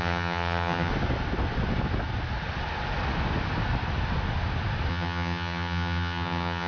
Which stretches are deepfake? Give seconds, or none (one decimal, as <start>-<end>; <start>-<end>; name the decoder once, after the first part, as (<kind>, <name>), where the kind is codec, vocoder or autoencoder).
0.0-0.9 (vocoder, HiFi-GAN); 4.9-6.7